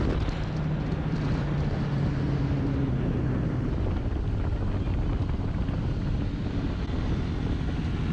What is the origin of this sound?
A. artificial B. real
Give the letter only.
B